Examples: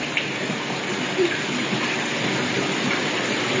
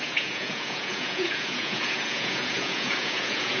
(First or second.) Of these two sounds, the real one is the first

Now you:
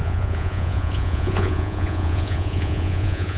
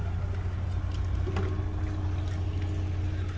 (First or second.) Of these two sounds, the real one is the second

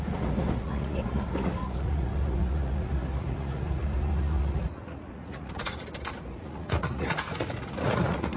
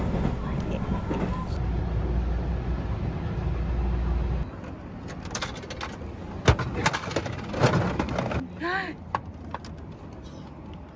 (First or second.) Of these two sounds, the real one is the second